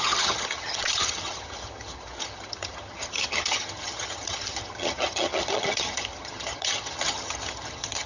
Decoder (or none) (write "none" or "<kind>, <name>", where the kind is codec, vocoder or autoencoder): vocoder, HiFi-GAN